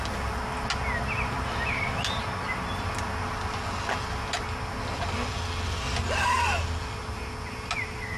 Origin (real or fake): real